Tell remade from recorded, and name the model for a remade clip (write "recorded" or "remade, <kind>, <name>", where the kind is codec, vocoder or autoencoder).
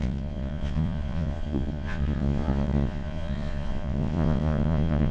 remade, vocoder, Vocos